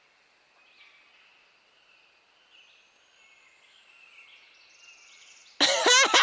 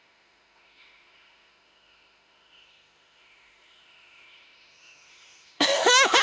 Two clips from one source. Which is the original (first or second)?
first